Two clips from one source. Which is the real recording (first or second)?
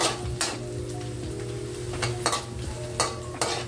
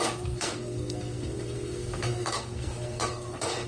first